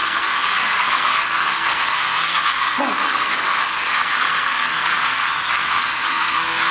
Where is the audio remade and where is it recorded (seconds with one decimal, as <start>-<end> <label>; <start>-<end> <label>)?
0.0-6.7 remade